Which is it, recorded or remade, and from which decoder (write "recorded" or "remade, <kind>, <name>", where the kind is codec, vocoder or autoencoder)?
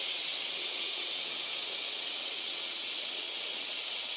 remade, vocoder, WaveNeXt